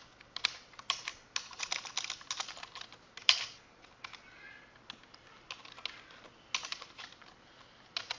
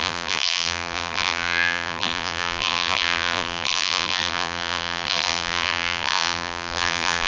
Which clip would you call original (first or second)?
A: first